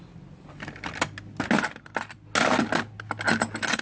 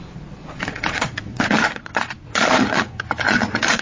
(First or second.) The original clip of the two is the first